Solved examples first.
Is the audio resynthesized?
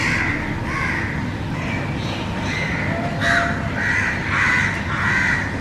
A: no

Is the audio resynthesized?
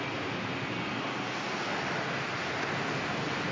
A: no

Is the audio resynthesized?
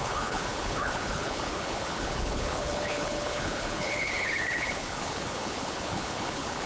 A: yes